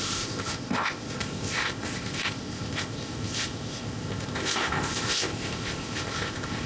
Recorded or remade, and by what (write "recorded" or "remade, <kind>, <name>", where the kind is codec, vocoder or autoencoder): remade, codec, ZipCodec